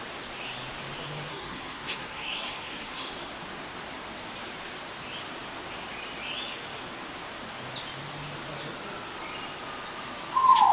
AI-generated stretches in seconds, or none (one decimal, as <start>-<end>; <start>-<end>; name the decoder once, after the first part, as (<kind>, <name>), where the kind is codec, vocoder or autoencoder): 1.3-3.1 (codec, SNAC)